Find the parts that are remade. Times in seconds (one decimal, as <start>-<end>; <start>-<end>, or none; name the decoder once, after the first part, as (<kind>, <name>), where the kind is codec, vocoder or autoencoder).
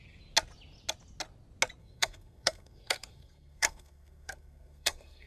1.8-5.3 (codec, SNAC)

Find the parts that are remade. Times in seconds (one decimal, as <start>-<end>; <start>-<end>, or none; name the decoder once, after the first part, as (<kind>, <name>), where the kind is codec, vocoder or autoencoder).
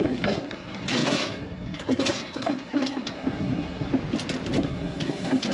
0.0-3.9 (codec, SNAC); 4.6-5.5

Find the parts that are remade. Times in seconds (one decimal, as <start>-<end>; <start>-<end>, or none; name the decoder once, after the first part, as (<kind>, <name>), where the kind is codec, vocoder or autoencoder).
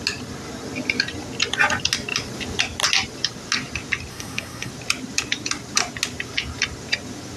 4.1-4.7 (codec, SNAC)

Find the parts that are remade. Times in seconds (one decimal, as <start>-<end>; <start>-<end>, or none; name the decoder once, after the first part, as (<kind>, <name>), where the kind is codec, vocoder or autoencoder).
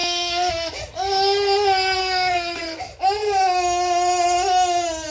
0.0-0.5 (codec, SNAC); 2.0-2.8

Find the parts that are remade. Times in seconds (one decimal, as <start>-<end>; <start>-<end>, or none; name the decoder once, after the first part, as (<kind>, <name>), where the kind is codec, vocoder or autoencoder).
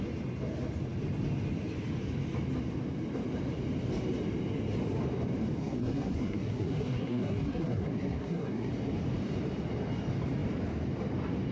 5.6-8.7 (codec, SNAC)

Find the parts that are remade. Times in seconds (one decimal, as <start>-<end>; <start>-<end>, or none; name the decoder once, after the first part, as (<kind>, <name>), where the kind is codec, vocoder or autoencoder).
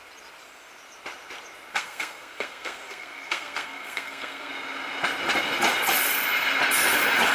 1.7-4.5 (codec, SNAC)